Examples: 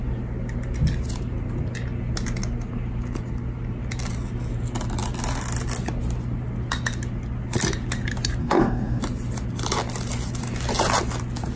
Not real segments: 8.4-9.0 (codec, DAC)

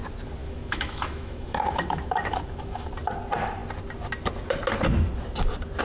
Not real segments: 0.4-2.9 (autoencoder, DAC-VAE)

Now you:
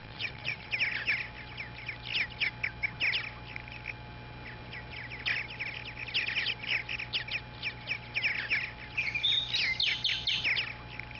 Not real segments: 0.0-0.7 (vocoder, Vocos)